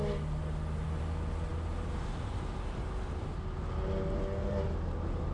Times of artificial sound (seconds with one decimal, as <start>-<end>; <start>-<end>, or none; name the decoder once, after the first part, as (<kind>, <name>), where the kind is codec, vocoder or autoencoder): none